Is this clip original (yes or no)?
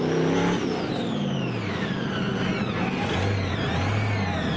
yes